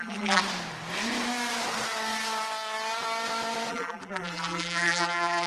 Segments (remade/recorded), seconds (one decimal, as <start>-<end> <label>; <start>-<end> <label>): 0.0-0.4 remade; 0.4-3.7 recorded; 3.7-5.5 remade